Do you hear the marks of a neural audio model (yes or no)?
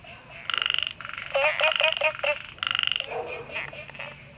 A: no